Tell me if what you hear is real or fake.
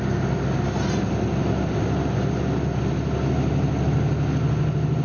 real